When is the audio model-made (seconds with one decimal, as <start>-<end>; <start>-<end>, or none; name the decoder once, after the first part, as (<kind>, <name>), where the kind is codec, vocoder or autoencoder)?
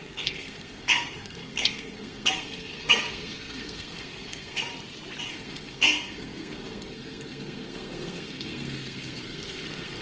0.0-4.7 (codec, SNAC); 5.3-10.0